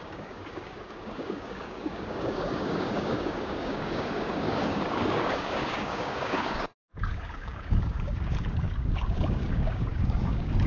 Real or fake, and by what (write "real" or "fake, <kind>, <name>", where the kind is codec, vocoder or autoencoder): fake, codec, DAC